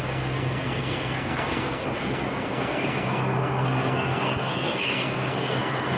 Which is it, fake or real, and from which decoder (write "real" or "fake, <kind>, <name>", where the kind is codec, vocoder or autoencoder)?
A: fake, codec, SNAC